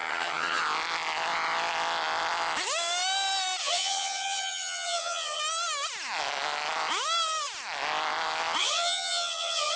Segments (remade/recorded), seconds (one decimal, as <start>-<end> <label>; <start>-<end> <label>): 0.0-0.6 remade; 0.6-3.6 recorded; 3.6-5.4 remade; 5.4-8.6 recorded; 8.6-9.8 remade